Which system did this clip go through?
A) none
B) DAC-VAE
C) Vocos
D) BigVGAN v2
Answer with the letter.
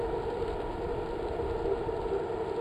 A